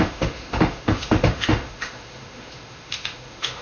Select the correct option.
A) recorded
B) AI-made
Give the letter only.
B